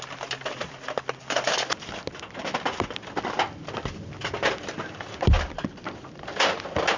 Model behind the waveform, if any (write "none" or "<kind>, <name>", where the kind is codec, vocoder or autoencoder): none